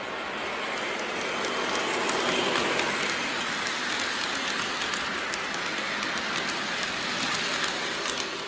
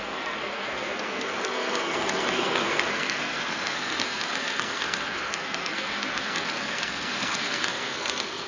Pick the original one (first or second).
first